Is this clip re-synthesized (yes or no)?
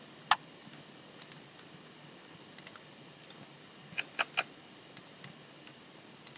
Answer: no